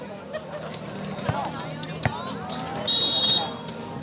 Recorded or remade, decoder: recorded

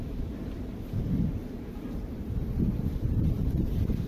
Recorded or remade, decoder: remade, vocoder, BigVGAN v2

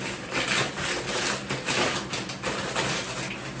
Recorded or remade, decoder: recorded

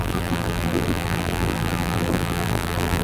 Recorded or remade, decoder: remade, vocoder, BigVGAN v2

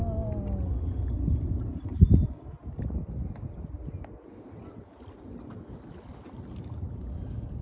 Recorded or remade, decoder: recorded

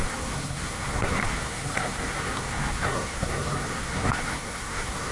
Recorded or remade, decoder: remade, codec, SNAC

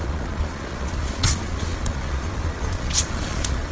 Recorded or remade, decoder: remade, vocoder, Vocos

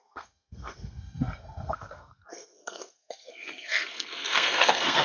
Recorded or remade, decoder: remade, codec, SNAC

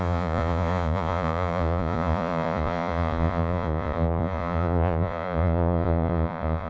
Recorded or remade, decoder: remade, vocoder, Vocos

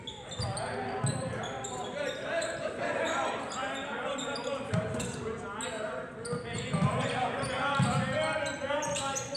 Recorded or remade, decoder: recorded